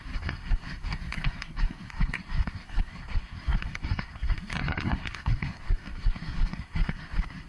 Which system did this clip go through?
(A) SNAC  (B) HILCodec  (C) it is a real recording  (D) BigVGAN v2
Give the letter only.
A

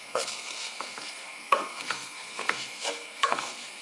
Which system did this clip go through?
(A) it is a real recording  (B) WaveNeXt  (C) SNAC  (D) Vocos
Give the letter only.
C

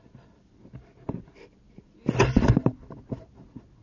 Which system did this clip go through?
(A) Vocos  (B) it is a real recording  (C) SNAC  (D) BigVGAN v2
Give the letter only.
B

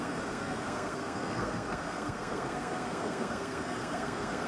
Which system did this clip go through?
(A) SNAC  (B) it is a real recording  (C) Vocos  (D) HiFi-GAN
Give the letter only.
A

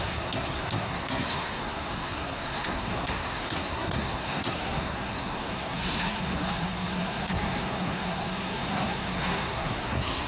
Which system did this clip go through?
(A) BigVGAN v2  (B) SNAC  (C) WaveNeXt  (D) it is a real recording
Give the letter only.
B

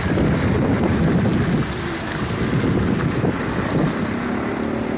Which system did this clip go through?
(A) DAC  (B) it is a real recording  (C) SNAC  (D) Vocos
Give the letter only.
B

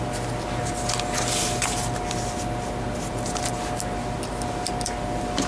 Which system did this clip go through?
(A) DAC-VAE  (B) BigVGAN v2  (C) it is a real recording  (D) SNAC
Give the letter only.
C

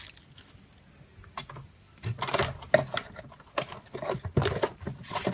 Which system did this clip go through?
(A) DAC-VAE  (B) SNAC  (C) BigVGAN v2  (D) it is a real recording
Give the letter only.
D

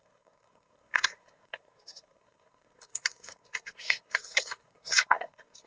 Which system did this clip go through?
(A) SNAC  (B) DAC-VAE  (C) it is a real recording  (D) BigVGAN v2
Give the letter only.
A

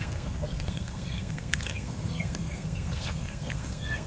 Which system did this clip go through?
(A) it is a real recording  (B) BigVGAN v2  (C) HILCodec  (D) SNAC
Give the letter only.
D